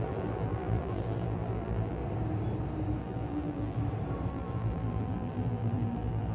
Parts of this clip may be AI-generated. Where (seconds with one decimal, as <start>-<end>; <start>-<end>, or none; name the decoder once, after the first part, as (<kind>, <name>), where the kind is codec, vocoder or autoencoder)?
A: 0.0-2.0 (vocoder, BigVGAN v2); 3.0-3.8; 4.3-6.3